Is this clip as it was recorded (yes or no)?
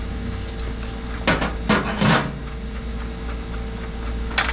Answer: yes